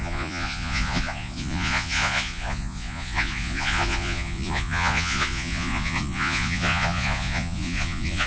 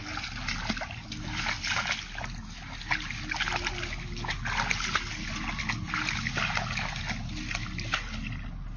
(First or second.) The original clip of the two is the second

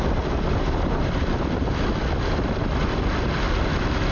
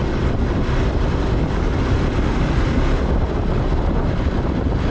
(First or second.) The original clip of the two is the first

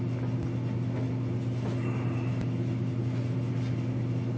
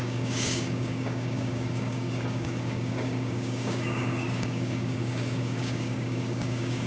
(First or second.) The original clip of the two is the first